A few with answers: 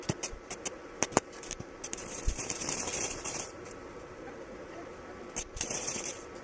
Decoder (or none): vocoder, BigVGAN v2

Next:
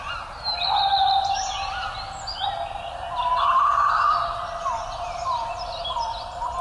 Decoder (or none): none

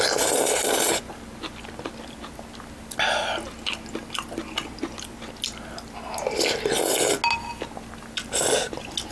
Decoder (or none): none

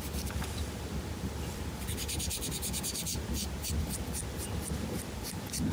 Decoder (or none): vocoder, BigVGAN v2